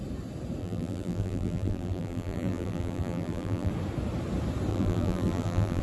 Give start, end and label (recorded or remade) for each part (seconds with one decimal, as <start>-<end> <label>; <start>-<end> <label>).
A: 0.0-0.6 recorded; 0.6-3.7 remade; 3.7-4.7 recorded; 4.7-5.8 remade